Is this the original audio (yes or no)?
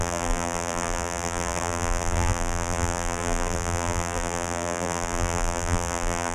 no